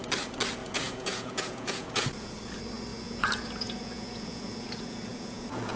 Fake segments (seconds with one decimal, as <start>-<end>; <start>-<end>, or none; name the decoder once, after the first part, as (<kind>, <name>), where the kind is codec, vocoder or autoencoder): 0.6-2.3 (vocoder, Vocos); 2.9-5.8